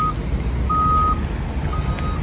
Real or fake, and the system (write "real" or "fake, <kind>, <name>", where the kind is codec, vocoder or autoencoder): real